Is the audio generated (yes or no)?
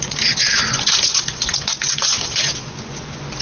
yes